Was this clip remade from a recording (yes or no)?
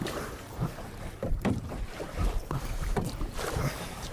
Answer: yes